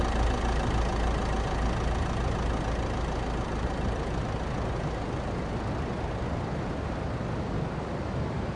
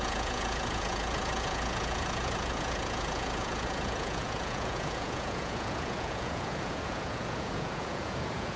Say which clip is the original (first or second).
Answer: first